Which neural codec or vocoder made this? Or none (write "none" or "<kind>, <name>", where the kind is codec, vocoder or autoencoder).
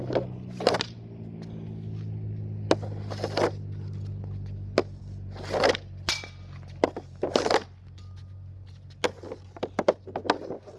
none